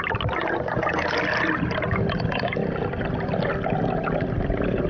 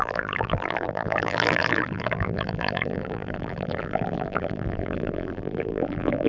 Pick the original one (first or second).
first